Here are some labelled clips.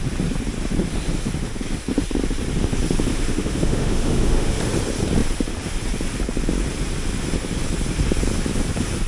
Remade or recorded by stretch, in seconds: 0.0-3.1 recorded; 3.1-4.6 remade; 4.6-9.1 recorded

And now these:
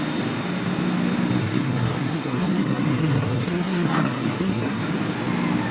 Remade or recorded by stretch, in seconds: 0.0-1.4 recorded; 1.4-4.8 remade; 4.8-5.7 recorded

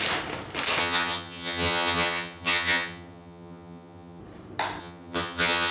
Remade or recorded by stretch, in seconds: 0.0-0.8 recorded; 0.8-4.2 remade; 4.2-4.8 recorded; 4.8-5.7 remade

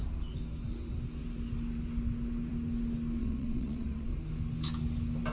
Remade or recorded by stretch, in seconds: 0.0-3.2 recorded; 3.2-4.1 remade; 4.1-5.3 recorded

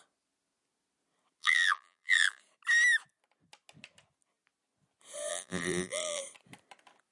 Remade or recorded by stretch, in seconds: 0.0-1.4 recorded; 1.4-2.4 remade; 2.4-5.3 recorded; 5.3-6.2 remade; 6.2-7.1 recorded

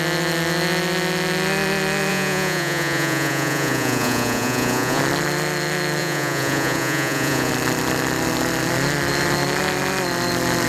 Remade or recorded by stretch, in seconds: 0.0-2.1 recorded; 2.1-5.0 remade; 5.0-6.0 recorded; 6.0-7.5 remade; 7.5-10.7 recorded

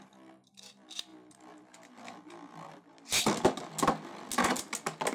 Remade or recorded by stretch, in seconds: 0.0-5.1 recorded

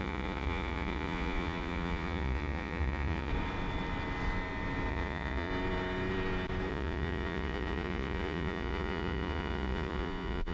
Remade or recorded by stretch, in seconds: 0.0-3.3 remade; 3.3-4.9 recorded; 4.9-5.5 remade; 5.5-6.7 recorded; 6.7-10.5 remade